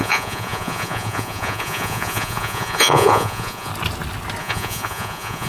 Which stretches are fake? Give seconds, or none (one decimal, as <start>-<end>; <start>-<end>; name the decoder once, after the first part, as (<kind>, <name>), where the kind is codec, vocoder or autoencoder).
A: 0.0-3.7 (vocoder, Vocos); 4.4-5.5